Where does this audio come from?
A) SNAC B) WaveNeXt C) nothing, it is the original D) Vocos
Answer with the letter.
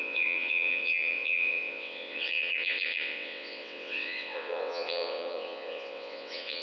B